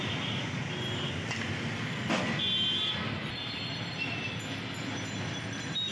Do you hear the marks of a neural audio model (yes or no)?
no